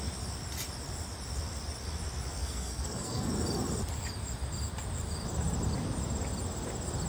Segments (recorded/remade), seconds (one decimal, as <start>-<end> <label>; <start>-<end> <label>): 0.0-2.4 recorded; 2.4-3.3 remade; 3.3-7.1 recorded